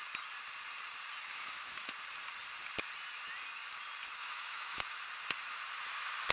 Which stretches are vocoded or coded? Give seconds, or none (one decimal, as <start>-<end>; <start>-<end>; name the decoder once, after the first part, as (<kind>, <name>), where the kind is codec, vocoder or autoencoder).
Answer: 1.3-1.9 (autoencoder, DAC-VAE); 4.2-4.8